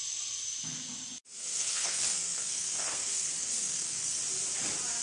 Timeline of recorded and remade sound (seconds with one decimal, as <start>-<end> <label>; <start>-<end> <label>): 0.0-1.2 recorded; 1.2-4.2 remade; 4.2-5.0 recorded